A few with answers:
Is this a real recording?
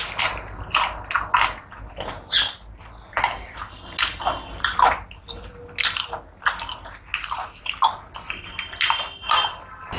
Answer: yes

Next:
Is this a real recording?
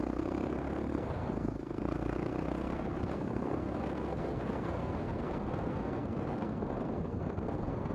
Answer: no